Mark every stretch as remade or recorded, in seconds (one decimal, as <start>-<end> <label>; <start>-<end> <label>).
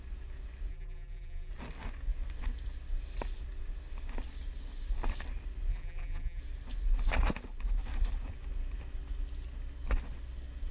0.0-0.7 recorded; 0.7-1.5 remade; 1.5-5.7 recorded; 5.7-6.4 remade; 6.4-10.7 recorded